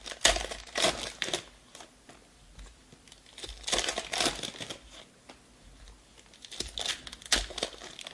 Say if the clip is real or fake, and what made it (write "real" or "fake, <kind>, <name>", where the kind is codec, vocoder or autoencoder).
real